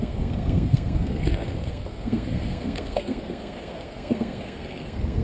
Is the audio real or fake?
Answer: fake